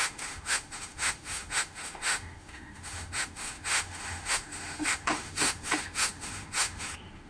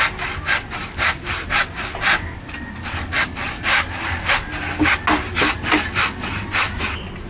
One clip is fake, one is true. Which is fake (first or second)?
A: first